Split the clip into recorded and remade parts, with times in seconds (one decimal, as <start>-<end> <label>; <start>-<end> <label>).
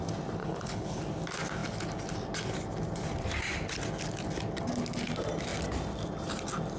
0.0-0.4 recorded; 0.4-1.0 remade; 1.0-6.8 recorded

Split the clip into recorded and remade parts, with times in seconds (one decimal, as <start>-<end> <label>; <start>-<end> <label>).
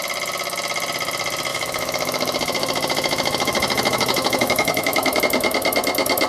0.0-1.5 recorded; 1.5-5.2 remade; 5.2-6.3 recorded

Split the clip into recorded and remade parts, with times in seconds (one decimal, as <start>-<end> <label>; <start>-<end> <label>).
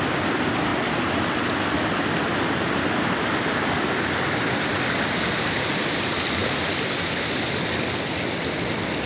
0.0-9.1 recorded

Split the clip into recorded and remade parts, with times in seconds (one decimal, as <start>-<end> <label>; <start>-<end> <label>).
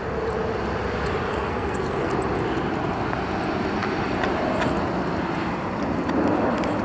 0.0-1.3 recorded; 1.3-2.1 remade; 2.1-6.8 recorded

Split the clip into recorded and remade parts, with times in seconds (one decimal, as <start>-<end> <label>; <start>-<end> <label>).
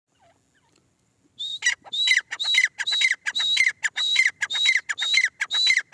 0.0-5.9 recorded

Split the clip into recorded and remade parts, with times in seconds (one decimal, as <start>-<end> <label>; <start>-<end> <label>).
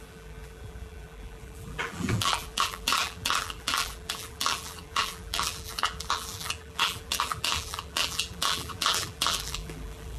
0.0-10.2 remade